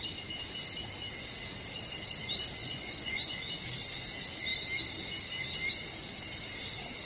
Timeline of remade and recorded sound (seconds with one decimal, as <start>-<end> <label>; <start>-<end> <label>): 0.0-2.6 recorded; 2.6-3.4 remade; 3.4-7.1 recorded